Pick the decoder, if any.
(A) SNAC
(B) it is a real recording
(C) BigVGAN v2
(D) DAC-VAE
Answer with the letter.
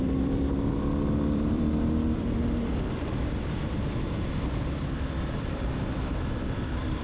C